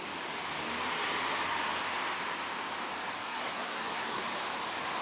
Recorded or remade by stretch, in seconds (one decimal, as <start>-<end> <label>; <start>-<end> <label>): 0.0-3.2 recorded; 3.2-4.2 remade; 4.2-5.0 recorded